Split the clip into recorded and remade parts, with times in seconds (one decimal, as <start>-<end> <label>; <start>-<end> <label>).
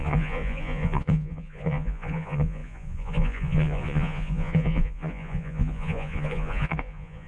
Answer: 0.0-7.3 remade